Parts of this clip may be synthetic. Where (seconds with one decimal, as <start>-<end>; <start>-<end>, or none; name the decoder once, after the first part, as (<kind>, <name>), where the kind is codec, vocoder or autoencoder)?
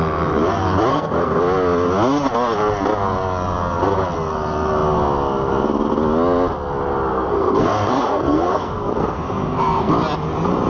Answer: 0.9-1.4 (codec, SNAC); 7.1-9.9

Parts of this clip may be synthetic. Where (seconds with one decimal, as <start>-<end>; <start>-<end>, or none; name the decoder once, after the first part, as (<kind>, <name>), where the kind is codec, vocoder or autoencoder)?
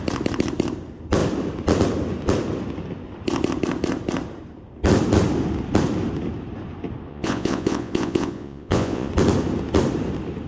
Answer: 7.1-9.1 (vocoder, Vocos)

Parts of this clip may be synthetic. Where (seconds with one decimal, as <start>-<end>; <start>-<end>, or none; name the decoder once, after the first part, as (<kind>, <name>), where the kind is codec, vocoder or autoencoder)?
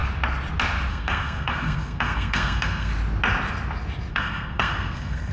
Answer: 0.9-2.9 (codec, SNAC); 4.1-5.3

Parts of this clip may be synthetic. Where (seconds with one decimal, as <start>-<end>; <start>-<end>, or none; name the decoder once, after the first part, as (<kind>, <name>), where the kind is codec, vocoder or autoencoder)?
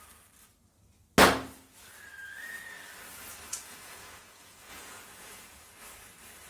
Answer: 3.5-5.7 (vocoder, Vocos)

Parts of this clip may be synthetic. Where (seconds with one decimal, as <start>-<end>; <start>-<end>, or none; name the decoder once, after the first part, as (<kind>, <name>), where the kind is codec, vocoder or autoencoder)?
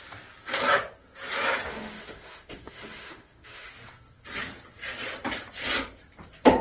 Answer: 1.7-3.7 (autoencoder, DAC-VAE)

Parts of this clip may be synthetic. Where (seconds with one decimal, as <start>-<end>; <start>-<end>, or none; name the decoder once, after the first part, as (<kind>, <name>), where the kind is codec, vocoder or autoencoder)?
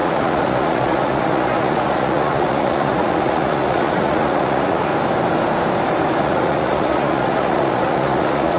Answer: 0.0-4.9 (vocoder, Vocos); 6.2-8.6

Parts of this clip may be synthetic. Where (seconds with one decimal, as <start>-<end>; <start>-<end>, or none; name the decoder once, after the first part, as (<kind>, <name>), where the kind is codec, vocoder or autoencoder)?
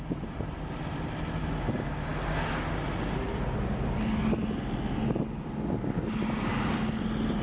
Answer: none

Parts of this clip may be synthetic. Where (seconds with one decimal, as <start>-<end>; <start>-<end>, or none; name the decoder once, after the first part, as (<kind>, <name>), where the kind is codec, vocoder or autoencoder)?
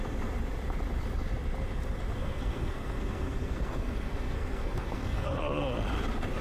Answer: 2.2-5.4 (codec, SNAC)